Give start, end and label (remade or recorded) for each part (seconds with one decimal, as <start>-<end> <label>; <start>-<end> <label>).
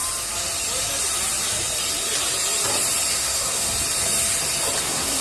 0.0-3.1 recorded; 3.1-3.7 remade; 3.7-4.8 recorded; 4.8-5.2 remade